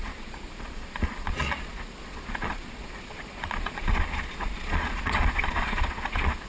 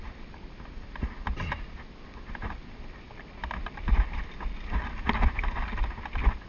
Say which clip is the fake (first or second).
first